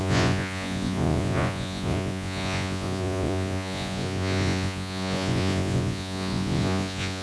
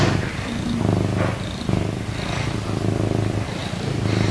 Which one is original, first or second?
second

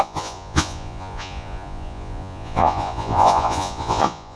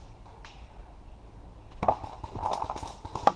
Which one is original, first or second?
second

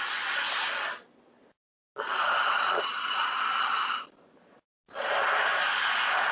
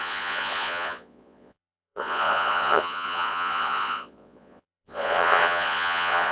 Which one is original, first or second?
first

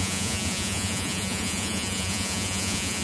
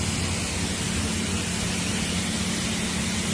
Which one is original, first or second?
second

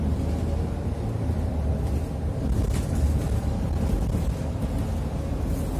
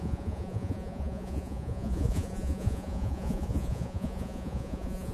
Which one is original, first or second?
first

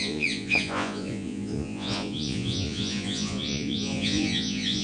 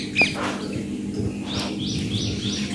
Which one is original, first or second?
second